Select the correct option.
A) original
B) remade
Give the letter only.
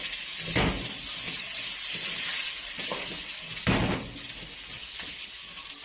A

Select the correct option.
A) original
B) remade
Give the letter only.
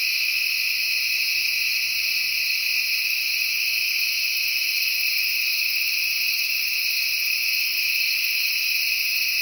A